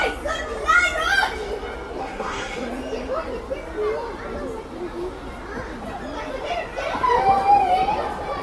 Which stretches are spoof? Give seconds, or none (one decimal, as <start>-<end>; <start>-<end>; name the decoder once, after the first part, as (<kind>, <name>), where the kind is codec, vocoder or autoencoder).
2.0-2.7 (codec, SNAC)